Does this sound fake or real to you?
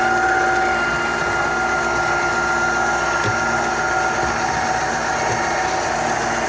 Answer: real